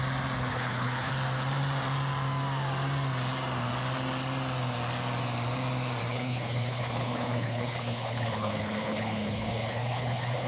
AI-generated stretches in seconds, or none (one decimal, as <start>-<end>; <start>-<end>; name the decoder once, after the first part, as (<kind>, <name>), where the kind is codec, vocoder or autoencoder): 0.5-1.1 (codec, HILCodec); 6.1-10.5